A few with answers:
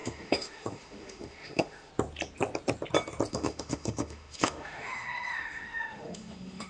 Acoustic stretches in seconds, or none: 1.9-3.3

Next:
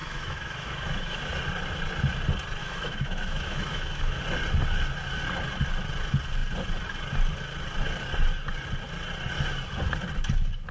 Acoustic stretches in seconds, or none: 1.3-2.6; 4.2-10.7